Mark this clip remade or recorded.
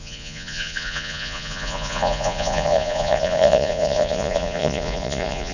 remade